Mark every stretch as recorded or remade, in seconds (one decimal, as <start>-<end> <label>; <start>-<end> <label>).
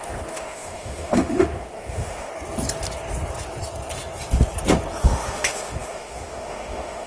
0.0-2.3 remade; 2.3-5.0 recorded; 5.0-7.1 remade